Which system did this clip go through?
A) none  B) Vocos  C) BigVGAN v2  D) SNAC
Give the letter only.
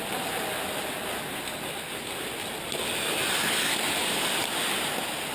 A